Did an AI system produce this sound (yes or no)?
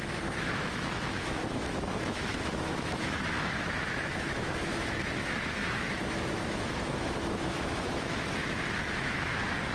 yes